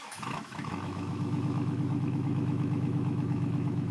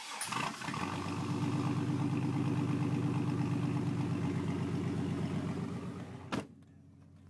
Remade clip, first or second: first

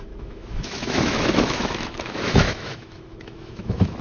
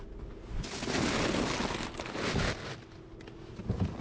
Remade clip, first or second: first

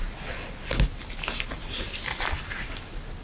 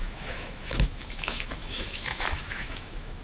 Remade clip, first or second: second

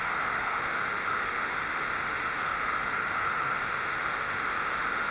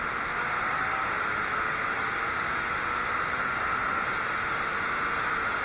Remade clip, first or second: first